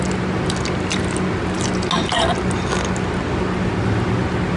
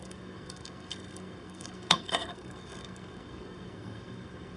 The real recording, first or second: first